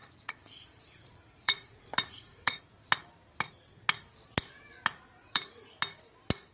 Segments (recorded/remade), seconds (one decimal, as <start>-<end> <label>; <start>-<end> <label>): 0.0-2.6 remade; 2.6-5.2 recorded; 5.2-5.7 remade; 5.7-6.5 recorded